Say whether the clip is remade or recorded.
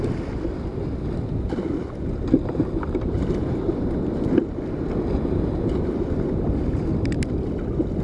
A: recorded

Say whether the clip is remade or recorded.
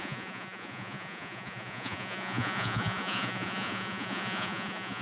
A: remade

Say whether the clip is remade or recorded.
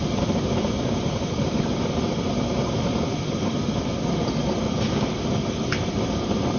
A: remade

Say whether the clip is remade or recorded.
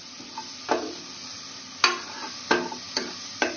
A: recorded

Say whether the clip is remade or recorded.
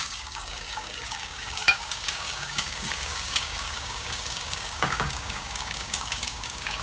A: remade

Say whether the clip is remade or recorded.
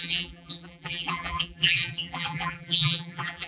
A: remade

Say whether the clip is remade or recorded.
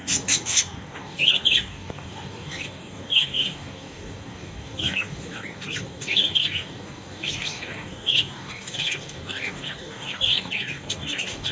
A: remade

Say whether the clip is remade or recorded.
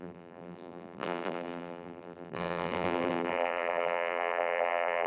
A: remade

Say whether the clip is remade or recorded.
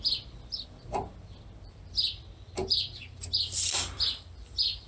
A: remade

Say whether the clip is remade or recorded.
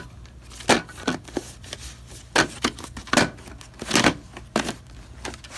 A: recorded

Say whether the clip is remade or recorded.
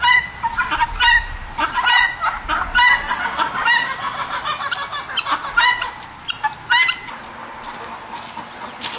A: recorded